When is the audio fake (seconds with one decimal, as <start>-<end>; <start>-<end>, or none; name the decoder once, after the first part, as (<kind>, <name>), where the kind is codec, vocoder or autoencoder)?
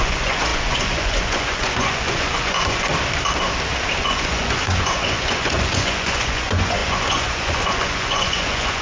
0.0-2.9 (vocoder, Vocos); 4.0-8.8